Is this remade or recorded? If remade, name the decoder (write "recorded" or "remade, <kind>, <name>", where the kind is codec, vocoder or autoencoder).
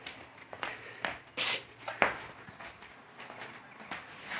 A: recorded